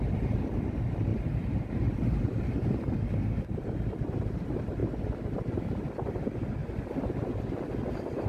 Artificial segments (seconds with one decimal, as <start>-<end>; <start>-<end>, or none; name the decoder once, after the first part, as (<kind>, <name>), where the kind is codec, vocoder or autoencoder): 1.1-3.0 (vocoder, BigVGAN v2)

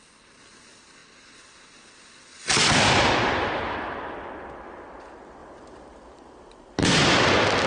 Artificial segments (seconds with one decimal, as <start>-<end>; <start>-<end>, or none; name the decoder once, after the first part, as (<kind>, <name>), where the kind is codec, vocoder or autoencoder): 5.4-6.9 (vocoder, BigVGAN v2)

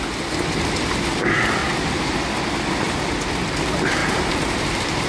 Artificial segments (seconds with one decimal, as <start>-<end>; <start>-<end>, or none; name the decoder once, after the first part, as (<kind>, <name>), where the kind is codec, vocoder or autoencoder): 1.6-2.3 (vocoder, BigVGAN v2); 4.0-5.1

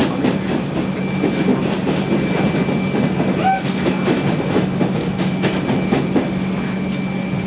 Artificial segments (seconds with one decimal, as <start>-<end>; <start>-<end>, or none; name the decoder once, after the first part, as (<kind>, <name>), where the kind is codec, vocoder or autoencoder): none

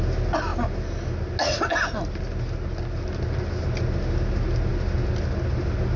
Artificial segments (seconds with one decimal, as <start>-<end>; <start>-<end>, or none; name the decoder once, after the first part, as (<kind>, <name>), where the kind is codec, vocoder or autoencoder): none

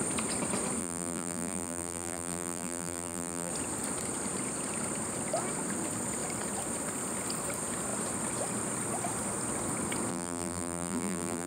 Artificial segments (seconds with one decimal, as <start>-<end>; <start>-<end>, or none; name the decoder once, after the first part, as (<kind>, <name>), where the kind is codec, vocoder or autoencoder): 0.8-3.5 (vocoder, BigVGAN v2); 10.1-11.5

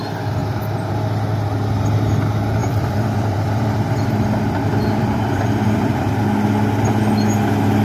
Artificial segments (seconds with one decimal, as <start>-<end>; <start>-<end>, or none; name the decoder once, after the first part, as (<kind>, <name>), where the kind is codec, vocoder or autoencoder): 2.6-6.2 (vocoder, BigVGAN v2)

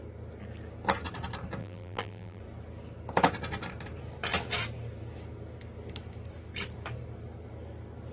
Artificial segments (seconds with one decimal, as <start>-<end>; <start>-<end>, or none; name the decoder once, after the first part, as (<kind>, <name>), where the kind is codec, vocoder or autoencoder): 1.6-2.4 (vocoder, BigVGAN v2)